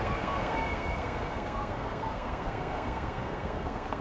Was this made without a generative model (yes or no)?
no